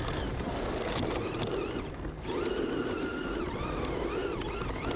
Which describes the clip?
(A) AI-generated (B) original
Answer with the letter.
B